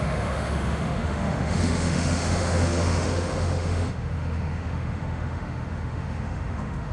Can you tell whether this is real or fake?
fake